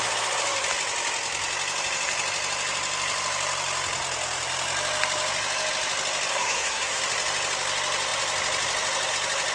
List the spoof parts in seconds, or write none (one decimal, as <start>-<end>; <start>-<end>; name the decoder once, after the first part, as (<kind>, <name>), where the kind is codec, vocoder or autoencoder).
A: 6.3-7.0 (codec, SNAC)